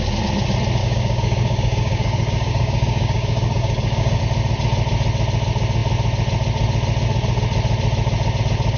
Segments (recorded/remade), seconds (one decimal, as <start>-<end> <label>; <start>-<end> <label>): 0.0-0.8 recorded; 0.8-4.2 remade; 4.2-8.8 recorded